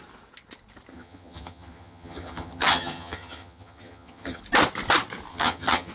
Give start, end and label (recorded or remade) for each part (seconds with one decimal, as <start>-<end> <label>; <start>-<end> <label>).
0.0-0.9 recorded; 0.9-4.4 remade; 4.4-5.3 recorded; 5.3-5.9 remade